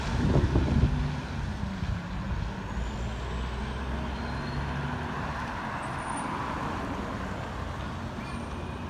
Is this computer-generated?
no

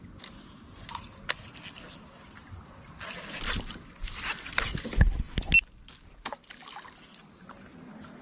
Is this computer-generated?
no